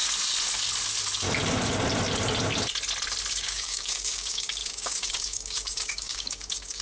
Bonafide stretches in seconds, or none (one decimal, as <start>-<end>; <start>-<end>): 0.0-3.3